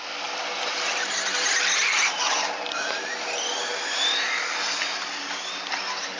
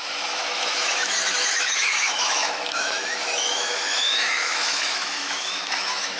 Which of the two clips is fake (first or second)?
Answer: second